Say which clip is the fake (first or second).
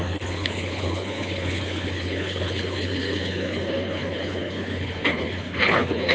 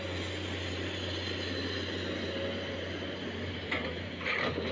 first